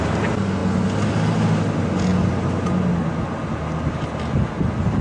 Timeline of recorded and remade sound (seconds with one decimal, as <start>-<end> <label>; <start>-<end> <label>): 0.0-5.0 recorded